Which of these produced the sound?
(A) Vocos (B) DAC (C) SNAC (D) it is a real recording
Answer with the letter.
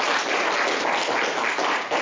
D